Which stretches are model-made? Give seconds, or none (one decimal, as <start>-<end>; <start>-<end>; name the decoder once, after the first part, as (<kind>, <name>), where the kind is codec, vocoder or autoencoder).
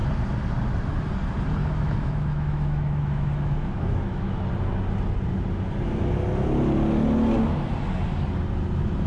1.6-4.3 (autoencoder, DAC-VAE)